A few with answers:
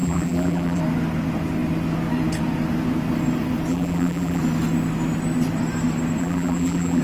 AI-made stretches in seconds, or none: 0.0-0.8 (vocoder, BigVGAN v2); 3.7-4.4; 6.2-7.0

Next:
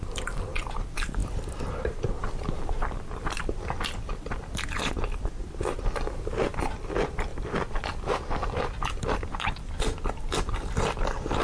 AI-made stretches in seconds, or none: 0.0-11.4 (vocoder, BigVGAN v2)